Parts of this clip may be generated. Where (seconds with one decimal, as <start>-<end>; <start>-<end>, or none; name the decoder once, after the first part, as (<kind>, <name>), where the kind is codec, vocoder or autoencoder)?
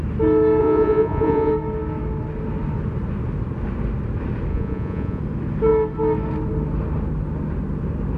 0.6-1.5 (vocoder, Vocos); 4.5-5.2